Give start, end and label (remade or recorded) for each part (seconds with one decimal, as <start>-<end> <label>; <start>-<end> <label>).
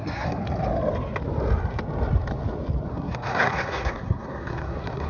0.0-0.4 remade; 0.4-2.9 recorded; 2.9-5.1 remade